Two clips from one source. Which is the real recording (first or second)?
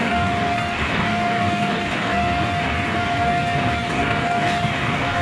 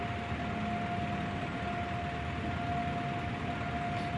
second